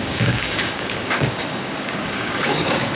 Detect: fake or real fake